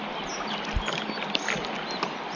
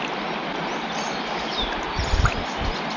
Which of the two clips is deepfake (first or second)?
second